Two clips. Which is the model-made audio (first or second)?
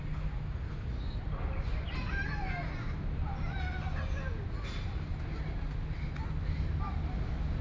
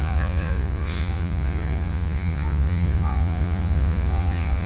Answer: second